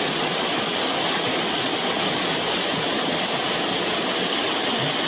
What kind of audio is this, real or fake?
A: real